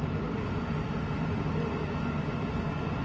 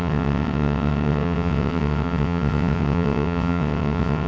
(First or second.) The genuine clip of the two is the first